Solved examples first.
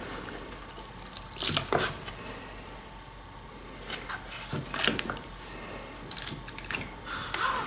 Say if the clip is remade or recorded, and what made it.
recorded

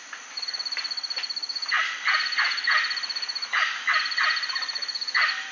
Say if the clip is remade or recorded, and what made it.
recorded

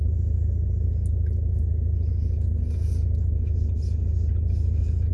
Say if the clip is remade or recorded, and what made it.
recorded